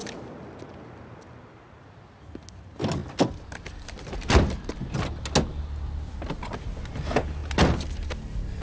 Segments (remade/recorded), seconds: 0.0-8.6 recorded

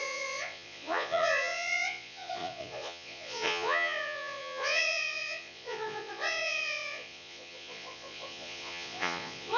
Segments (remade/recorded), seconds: 0.0-9.6 remade

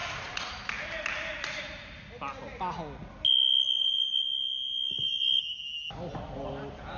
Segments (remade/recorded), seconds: 0.0-0.6 remade; 0.6-7.0 recorded

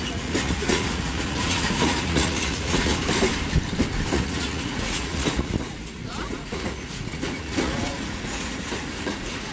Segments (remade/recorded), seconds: 0.0-2.9 remade; 2.9-4.1 recorded; 4.1-9.5 remade

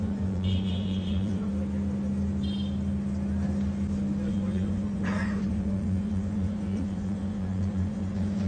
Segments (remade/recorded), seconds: 0.0-1.5 remade; 1.5-4.3 recorded; 4.3-8.5 remade

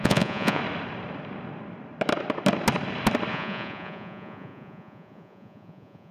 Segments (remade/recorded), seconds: 0.0-0.6 remade; 0.6-3.3 recorded; 3.3-6.1 remade

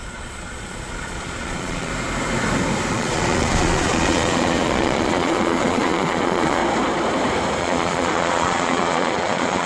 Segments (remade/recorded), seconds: 0.0-1.9 remade; 1.9-2.9 recorded; 2.9-6.6 remade; 6.6-7.6 recorded; 7.6-9.7 remade